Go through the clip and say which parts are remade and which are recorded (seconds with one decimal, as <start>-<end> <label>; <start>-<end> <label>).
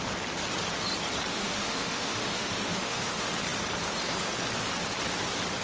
0.0-1.3 recorded; 1.3-3.3 remade; 3.3-5.6 recorded